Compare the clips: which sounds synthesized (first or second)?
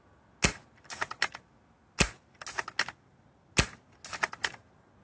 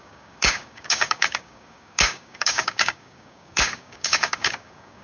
second